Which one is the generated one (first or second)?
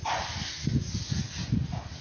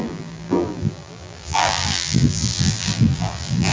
second